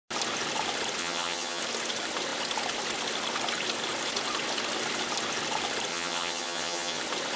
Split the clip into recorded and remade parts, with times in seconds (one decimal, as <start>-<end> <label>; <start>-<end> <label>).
0.0-1.0 recorded; 1.0-1.6 remade; 1.6-5.9 recorded; 5.9-7.0 remade; 7.0-7.4 recorded